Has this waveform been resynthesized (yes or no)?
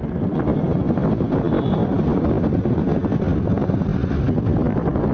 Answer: no